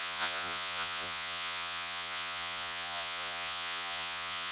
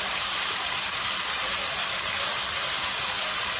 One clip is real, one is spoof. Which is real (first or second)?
second